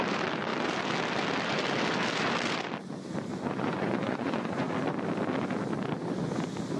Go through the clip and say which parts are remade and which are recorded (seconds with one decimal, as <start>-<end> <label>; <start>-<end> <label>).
0.0-3.3 recorded; 3.3-4.7 remade; 4.7-6.8 recorded